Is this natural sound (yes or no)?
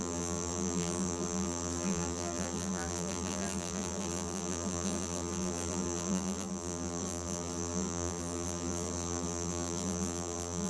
no